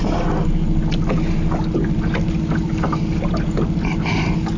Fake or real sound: real